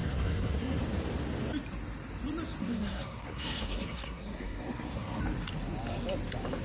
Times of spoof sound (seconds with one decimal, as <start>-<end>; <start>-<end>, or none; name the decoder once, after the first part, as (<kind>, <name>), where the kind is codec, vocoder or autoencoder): 0.0-0.8 (codec, SNAC); 2.6-5.2